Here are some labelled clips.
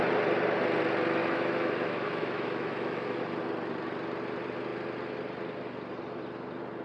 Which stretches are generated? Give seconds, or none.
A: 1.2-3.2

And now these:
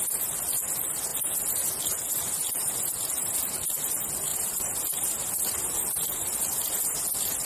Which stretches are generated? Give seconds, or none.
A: none